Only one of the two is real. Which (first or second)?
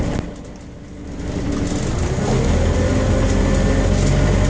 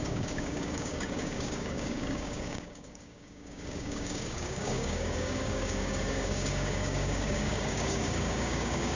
first